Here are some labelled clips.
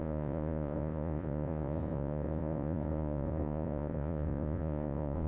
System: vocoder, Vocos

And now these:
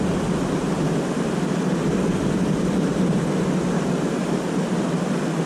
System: none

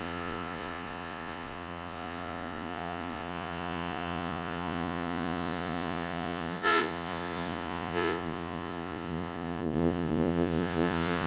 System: vocoder, Vocos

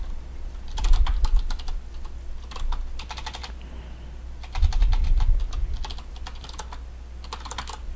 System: none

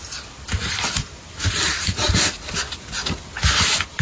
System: none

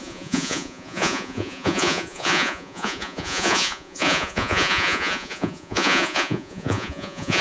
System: vocoder, Vocos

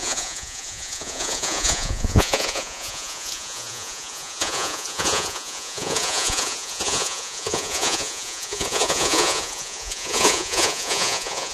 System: vocoder, Vocos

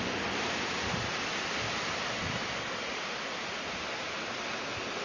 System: none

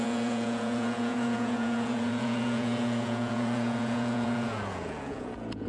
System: vocoder, Vocos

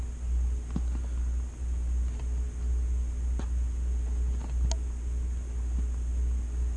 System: none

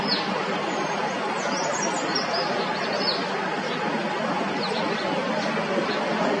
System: none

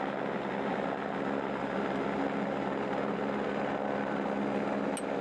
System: none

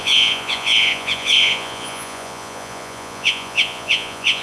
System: vocoder, Vocos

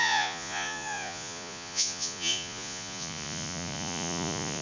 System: vocoder, Vocos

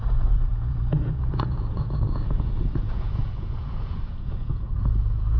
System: vocoder, Vocos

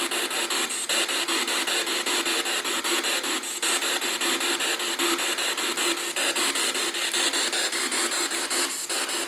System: none